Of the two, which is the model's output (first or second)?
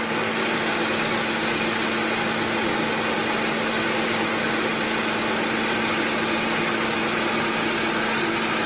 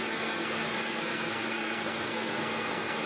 second